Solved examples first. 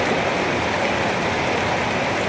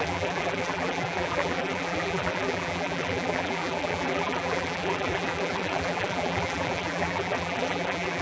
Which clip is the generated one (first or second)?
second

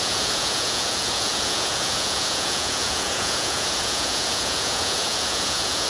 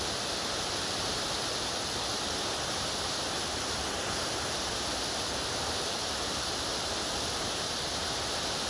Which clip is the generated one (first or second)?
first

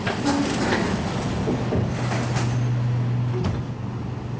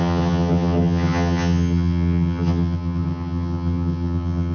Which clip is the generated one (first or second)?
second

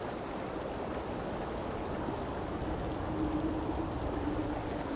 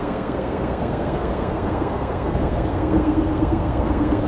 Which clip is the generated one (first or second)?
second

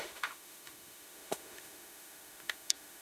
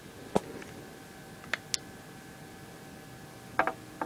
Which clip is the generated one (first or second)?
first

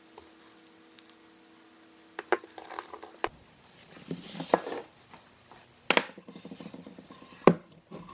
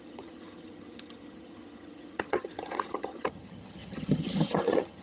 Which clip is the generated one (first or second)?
second